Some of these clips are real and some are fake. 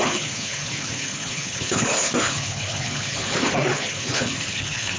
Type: fake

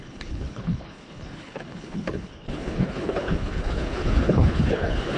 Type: fake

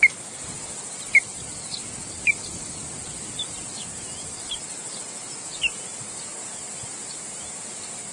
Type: real